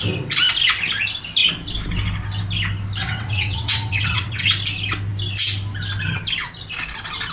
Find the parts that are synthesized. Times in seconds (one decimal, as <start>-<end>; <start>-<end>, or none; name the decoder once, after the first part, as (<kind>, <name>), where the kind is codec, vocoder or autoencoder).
3.0-4.5 (vocoder, WaveNeXt)